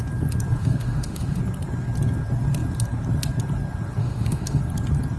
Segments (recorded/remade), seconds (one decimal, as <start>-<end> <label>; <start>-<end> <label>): 0.0-0.6 recorded; 0.6-1.4 remade; 1.4-4.0 recorded; 4.0-4.6 remade; 4.6-5.2 recorded